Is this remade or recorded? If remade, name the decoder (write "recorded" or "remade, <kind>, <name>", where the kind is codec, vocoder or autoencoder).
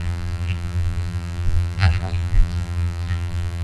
remade, vocoder, BigVGAN v2